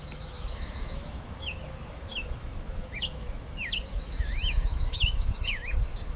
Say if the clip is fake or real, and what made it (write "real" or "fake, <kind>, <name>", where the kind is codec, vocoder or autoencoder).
fake, autoencoder, DAC-VAE